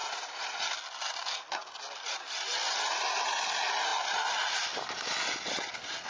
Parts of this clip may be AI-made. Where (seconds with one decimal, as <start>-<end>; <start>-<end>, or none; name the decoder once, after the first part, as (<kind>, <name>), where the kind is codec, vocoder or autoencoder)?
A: none